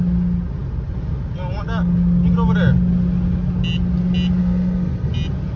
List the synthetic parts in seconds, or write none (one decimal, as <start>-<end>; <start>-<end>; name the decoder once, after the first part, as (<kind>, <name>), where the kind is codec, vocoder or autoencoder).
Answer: 4.4-5.1 (codec, SNAC)